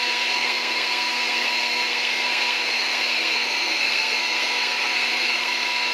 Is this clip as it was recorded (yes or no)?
no